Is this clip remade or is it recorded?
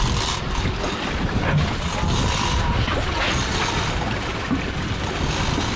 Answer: recorded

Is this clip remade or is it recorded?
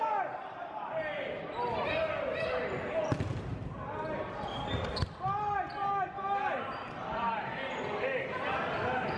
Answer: recorded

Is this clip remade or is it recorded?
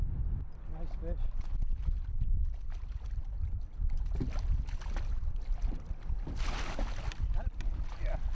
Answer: recorded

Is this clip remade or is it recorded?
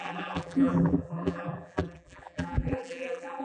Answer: remade